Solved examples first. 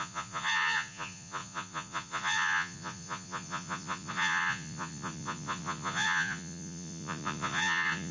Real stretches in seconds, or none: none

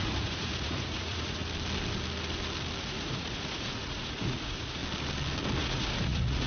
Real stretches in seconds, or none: 1.4-2.8; 4.8-5.6

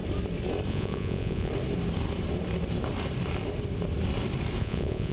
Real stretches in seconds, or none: 0.0-0.7; 1.5-4.6

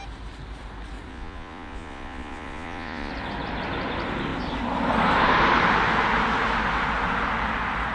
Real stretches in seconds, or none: 0.0-1.1; 3.1-7.9

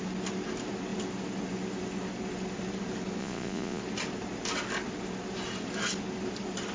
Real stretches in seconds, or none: 0.0-3.2; 3.8-6.7

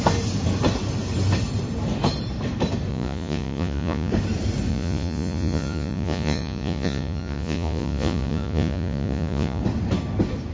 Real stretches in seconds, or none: 0.0-2.9; 4.1-4.7; 9.6-10.5

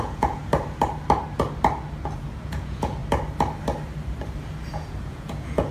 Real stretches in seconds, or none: 0.4-2.2; 3.0-4.7